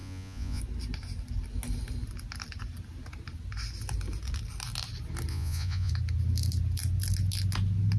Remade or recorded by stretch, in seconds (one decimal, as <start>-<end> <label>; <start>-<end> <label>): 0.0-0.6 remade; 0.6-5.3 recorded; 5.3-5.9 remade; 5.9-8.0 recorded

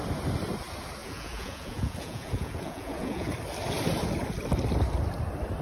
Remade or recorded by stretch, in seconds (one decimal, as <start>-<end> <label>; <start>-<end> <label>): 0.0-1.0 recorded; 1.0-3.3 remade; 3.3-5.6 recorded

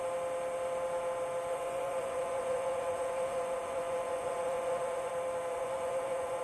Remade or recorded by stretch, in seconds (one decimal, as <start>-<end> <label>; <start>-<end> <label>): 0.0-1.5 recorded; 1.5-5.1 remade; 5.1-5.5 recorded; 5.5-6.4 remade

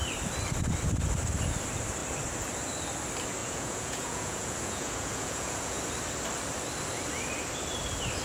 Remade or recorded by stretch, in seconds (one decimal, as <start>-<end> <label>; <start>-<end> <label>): 0.0-3.4 recorded; 3.4-5.8 remade; 5.8-8.2 recorded